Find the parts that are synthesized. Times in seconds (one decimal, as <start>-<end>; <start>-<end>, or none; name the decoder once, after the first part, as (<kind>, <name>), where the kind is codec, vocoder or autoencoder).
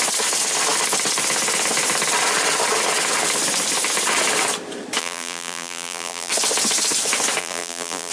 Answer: 5.0-6.3 (vocoder, BigVGAN v2); 7.4-8.1